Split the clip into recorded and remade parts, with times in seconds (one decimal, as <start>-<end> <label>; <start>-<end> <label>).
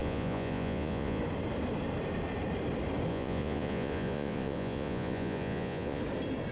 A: 0.0-1.2 remade; 1.2-3.1 recorded; 3.1-6.0 remade; 6.0-6.5 recorded